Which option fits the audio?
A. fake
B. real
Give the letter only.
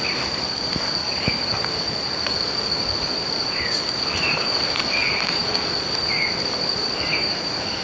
A